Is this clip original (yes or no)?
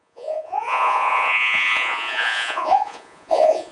no